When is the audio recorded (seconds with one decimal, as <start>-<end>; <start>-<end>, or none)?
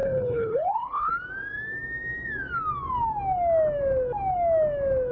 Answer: 1.1-5.1